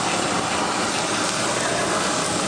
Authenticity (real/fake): real